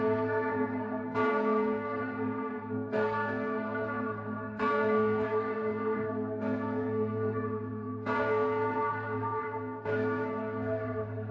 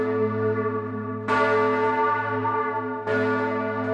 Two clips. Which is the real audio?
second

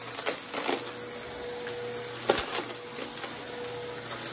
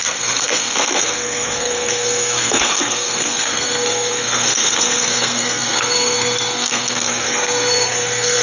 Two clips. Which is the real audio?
first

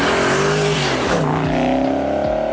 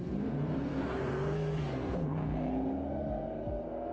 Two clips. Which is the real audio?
first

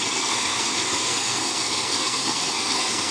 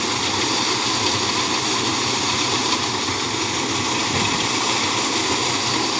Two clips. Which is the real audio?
second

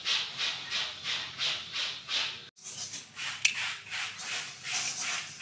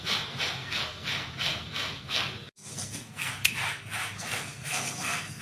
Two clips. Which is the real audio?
first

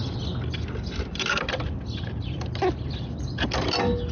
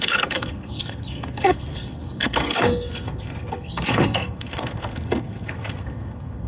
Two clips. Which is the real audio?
first